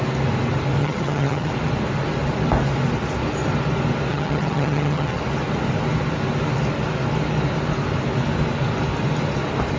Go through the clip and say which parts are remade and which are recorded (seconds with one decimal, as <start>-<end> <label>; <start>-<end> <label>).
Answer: 0.0-0.8 recorded; 0.8-1.5 remade; 1.5-4.1 recorded; 4.1-5.2 remade; 5.2-9.8 recorded